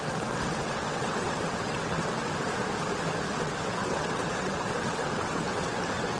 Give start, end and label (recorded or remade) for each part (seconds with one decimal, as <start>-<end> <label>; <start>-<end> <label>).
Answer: 0.0-2.3 remade; 2.3-3.4 recorded; 3.4-6.2 remade